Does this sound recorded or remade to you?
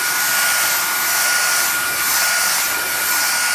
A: recorded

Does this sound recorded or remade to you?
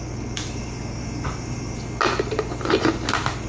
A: recorded